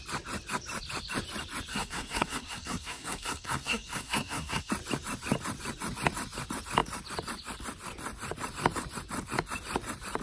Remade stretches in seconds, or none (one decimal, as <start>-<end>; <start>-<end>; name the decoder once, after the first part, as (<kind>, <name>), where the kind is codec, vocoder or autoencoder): 1.7-4.7 (codec, SNAC)